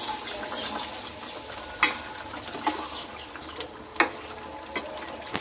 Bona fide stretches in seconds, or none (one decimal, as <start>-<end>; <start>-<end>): 0.0-5.4